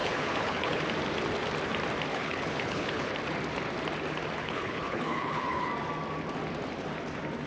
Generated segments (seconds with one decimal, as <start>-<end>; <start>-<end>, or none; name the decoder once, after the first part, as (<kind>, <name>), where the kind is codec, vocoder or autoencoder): 0.0-0.8 (codec, HILCodec); 2.1-3.1; 4.4-5.7

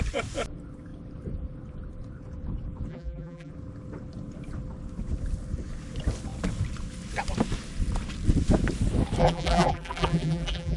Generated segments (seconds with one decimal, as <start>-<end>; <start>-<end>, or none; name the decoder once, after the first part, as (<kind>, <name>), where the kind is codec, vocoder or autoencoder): 2.9-3.5 (vocoder, BigVGAN v2); 9.2-10.8

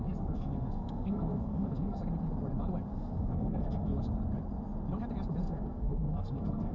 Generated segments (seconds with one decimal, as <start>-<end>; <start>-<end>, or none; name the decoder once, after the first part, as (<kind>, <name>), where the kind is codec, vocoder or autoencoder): 0.0-2.0 (codec, SNAC); 3.2-3.9; 5.4-6.7

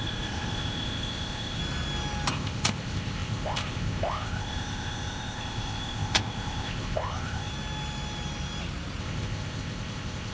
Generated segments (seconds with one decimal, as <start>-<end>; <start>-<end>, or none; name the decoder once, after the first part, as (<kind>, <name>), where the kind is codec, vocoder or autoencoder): 0.0-1.6 (codec, ZipCodec); 2.3-7.5; 9.0-10.3

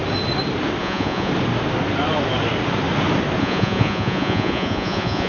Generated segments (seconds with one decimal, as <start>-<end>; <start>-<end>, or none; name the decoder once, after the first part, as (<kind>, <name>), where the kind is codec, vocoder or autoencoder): 0.8-1.3 (vocoder, Vocos); 3.4-5.3

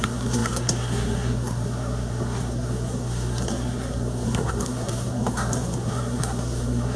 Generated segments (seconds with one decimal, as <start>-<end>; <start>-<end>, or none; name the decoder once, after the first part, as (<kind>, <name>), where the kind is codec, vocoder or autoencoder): 0.0-7.0 (codec, SNAC)

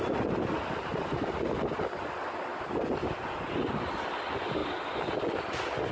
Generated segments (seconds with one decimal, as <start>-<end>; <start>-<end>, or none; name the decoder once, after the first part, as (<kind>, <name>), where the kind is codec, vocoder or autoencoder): none

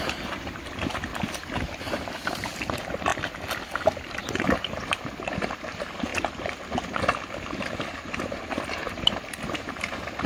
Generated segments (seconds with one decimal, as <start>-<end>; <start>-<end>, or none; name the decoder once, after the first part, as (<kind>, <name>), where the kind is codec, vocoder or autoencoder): 0.0-1.1 (vocoder, BigVGAN v2); 1.8-3.1; 4.1-6.1; 7.6-10.3